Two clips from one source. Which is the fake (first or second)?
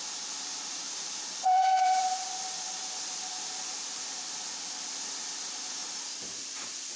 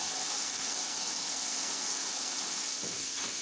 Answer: second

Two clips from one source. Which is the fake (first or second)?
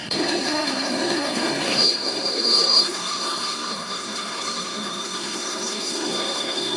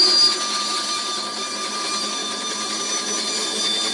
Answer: first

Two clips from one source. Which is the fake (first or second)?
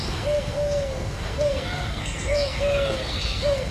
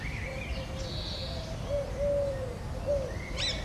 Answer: first